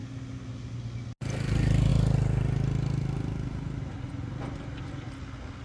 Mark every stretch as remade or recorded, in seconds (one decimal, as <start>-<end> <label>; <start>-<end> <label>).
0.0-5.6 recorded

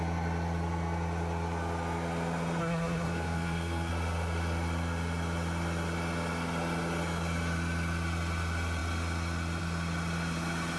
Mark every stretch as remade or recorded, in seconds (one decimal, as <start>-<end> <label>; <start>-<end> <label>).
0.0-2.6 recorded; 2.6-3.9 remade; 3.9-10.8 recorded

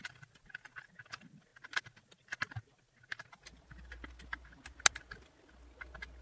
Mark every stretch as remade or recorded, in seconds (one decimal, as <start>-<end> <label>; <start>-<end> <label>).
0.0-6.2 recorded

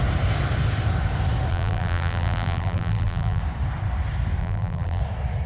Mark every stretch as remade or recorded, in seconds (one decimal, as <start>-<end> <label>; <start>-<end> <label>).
0.0-1.5 recorded; 1.5-3.4 remade; 3.4-4.4 recorded; 4.4-5.0 remade; 5.0-5.5 recorded